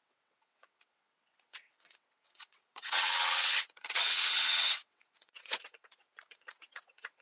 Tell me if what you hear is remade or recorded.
remade